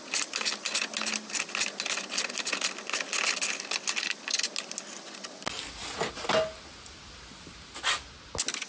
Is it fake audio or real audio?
real